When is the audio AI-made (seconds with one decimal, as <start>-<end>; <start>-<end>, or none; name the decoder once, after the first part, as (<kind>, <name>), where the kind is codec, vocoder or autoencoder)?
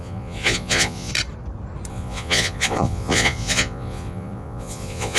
0.0-1.1 (vocoder, Vocos); 1.9-5.2